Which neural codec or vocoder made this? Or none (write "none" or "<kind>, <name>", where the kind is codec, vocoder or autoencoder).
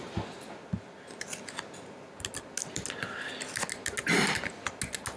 none